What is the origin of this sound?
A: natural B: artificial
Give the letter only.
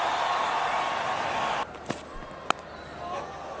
A